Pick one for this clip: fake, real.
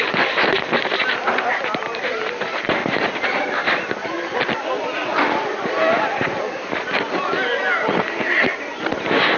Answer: real